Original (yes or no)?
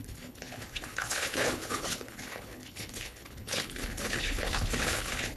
no